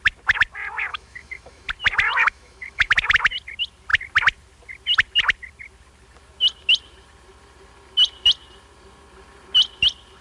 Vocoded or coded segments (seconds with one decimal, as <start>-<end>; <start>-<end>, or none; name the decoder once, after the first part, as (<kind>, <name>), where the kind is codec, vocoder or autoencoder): 0.9-1.7 (autoencoder, DAC-VAE); 2.2-2.9